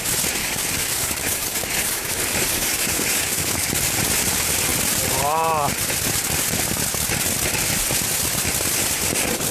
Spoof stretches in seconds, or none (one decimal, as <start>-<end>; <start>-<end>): 0.4-3.7